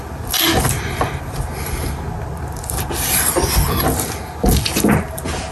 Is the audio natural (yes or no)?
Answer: yes